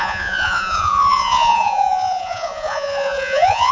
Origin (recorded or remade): remade